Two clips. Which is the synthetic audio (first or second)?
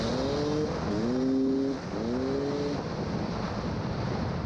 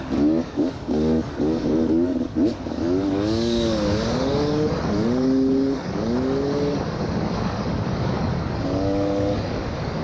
second